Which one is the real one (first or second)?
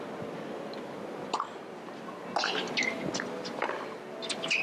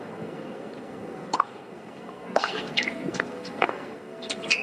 first